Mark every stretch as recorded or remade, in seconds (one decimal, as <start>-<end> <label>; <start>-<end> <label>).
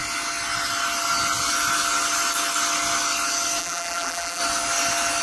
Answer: 0.0-3.6 recorded; 3.6-4.4 remade; 4.4-5.2 recorded